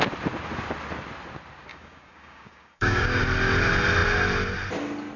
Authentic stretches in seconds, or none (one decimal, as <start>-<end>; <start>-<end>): 0.0-1.7; 3.2-5.2